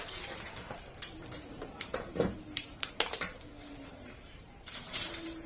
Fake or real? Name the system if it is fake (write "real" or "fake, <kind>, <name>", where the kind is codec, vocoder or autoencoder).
fake, vocoder, BigVGAN v2